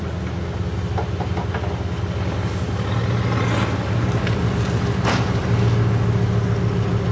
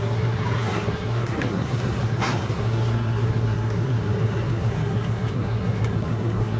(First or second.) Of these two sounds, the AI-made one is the second